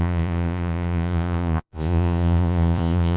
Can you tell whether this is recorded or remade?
remade